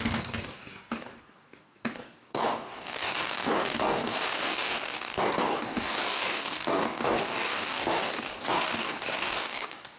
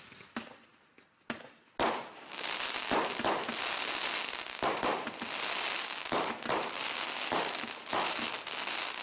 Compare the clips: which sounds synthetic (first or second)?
first